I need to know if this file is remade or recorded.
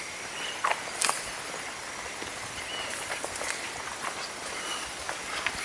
recorded